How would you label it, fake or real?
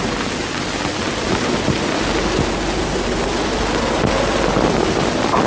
real